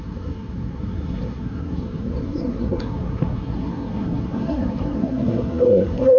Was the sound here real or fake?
fake